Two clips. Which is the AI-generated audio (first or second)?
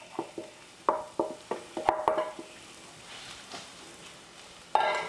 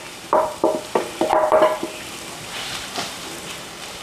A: second